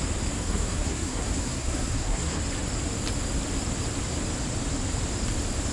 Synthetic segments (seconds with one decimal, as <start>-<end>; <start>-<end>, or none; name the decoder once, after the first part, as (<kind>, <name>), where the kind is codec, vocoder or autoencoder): 0.4-2.4 (codec, SNAC)